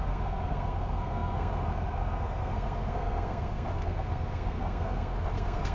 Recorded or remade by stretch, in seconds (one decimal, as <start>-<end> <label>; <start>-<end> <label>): 0.0-5.7 remade